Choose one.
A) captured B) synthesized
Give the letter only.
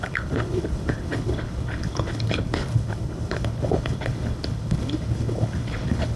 B